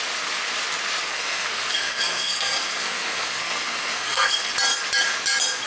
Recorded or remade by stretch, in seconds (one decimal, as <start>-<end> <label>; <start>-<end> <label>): 0.0-1.1 recorded; 1.1-4.5 remade; 4.5-5.7 recorded